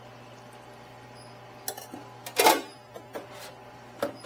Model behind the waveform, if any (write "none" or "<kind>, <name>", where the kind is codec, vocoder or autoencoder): none